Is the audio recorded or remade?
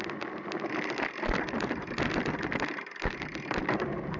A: recorded